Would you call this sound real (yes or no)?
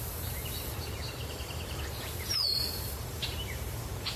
no